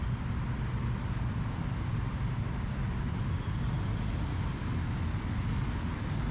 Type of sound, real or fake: real